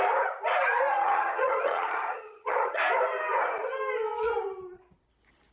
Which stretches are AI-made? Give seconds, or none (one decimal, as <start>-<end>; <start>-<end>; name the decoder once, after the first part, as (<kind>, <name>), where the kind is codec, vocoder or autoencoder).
0.9-2.8 (vocoder, HiFi-GAN)